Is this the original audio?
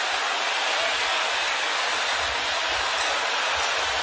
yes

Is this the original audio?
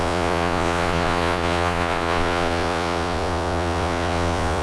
no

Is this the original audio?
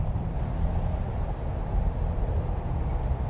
yes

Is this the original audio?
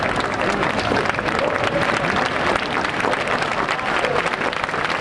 yes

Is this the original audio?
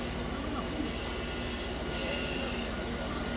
yes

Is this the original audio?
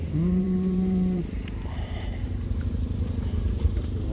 no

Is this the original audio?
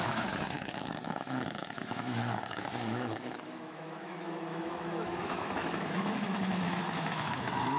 no